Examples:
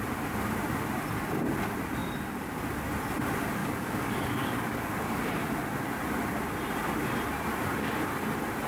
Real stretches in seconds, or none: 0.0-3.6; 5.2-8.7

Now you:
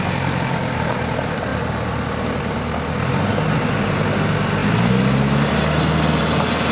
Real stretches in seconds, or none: 0.0-6.7

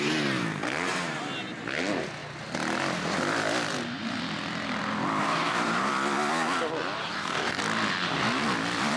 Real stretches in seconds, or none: 0.0-5.2; 5.9-7.1; 7.6-9.0

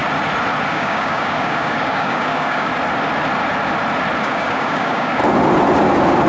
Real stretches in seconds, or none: 0.0-0.7; 2.7-4.2; 5.2-6.3